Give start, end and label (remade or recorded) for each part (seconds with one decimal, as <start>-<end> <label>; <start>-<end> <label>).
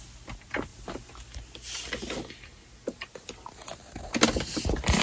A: 0.0-5.0 recorded